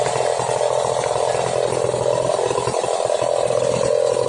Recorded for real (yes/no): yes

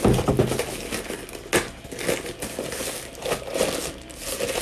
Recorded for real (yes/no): yes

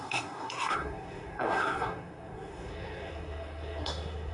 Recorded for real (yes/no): no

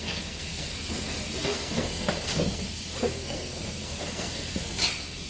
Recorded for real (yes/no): no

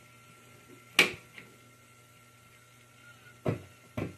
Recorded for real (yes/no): yes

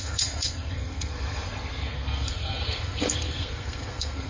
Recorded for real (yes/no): no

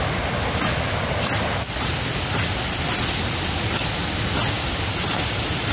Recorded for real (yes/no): yes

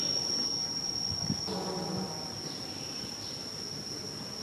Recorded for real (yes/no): yes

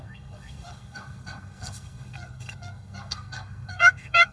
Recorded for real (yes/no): no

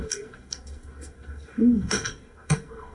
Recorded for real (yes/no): no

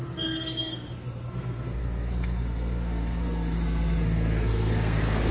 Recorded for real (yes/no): no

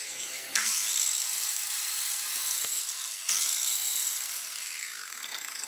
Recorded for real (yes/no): no